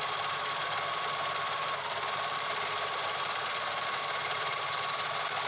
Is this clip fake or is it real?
real